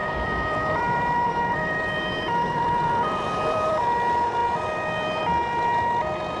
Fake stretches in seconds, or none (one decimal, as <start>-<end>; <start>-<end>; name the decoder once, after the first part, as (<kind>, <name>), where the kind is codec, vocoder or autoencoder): 0.0-3.8 (vocoder, BigVGAN v2)